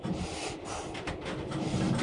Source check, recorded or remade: recorded